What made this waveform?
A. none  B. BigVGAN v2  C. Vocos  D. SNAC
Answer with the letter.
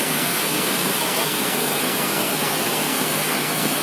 D